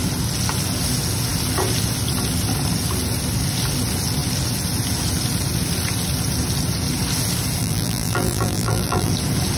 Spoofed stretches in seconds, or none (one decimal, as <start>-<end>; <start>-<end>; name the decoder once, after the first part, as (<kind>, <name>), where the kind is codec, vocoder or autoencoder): 7.6-9.1 (vocoder, BigVGAN v2)